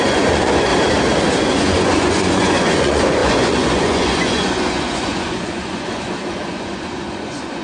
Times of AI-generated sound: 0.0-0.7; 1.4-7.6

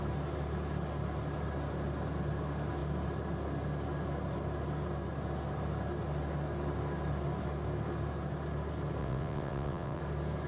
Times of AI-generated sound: 9.0-10.0

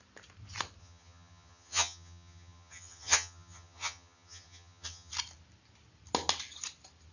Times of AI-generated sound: 0.8-5.1